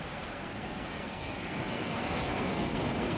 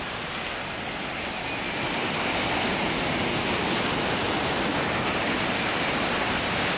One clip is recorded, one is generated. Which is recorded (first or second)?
second